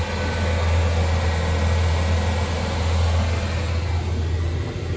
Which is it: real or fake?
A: real